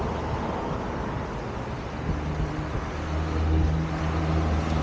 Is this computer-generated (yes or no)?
no